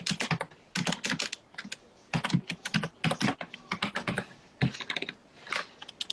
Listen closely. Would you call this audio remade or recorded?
recorded